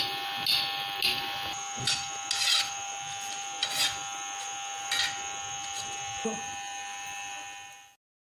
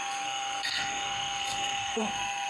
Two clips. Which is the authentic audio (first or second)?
first